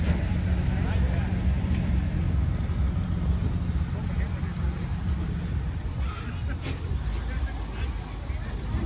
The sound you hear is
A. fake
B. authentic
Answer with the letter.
B